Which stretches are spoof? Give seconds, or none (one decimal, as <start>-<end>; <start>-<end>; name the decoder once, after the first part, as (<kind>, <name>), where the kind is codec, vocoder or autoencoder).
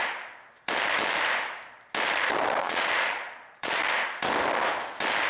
2.6-3.8 (vocoder, Vocos)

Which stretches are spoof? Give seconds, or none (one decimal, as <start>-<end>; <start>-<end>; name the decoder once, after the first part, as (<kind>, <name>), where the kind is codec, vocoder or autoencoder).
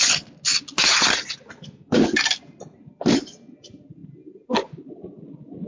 none